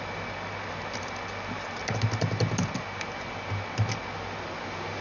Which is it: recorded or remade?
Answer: recorded